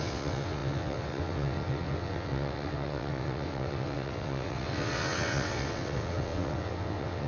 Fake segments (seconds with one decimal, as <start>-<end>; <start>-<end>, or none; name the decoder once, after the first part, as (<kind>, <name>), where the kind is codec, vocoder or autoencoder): 0.0-7.3 (vocoder, WaveNeXt)

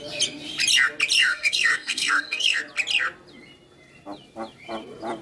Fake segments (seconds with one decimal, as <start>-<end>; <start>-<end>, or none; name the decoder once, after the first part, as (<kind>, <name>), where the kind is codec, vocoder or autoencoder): 1.2-2.6 (codec, SNAC)

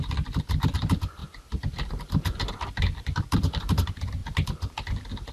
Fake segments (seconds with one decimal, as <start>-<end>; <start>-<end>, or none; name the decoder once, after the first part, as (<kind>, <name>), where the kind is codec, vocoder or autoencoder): 0.0-1.2 (vocoder, BigVGAN v2); 2.5-4.2

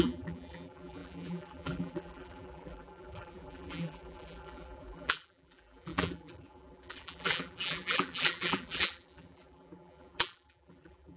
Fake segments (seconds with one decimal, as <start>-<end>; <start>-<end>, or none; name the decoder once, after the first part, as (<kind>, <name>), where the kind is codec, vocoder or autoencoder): 0.0-11.2 (vocoder, BigVGAN v2)